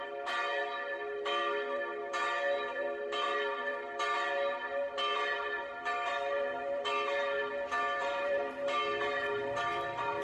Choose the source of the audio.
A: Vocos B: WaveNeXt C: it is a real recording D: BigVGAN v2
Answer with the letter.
D